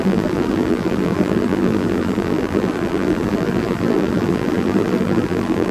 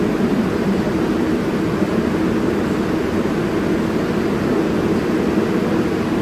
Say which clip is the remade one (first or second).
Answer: first